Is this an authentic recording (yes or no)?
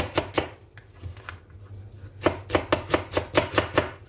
yes